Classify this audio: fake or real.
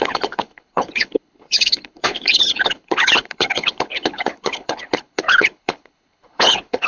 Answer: fake